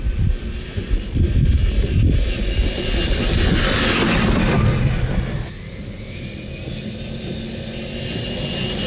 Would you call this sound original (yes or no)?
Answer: yes